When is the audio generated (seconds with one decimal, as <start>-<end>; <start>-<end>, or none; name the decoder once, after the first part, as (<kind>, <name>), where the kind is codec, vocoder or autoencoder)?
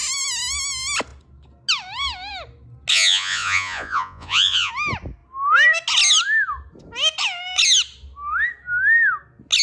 2.9-4.7 (vocoder, Vocos)